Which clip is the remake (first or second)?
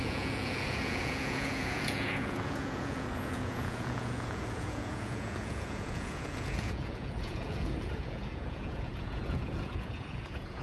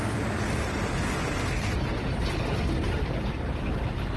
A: first